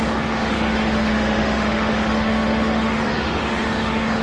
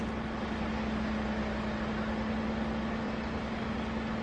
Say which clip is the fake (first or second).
first